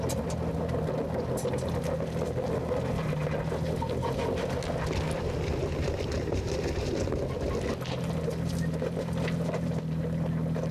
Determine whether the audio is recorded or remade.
recorded